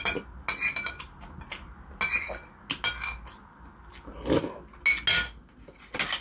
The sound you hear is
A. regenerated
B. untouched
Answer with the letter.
B